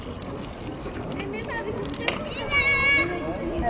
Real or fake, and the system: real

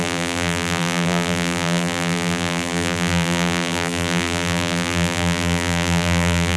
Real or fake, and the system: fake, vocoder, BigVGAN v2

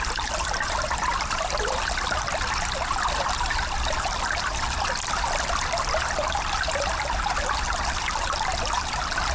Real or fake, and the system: real